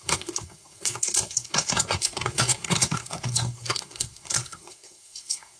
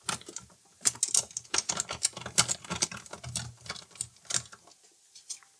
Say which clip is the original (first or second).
second